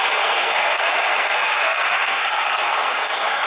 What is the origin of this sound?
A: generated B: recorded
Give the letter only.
A